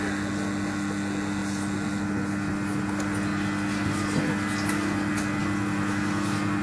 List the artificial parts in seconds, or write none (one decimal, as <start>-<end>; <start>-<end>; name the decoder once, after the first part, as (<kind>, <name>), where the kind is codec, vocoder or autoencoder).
none